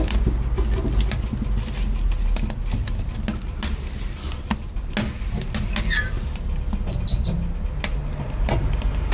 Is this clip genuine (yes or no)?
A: yes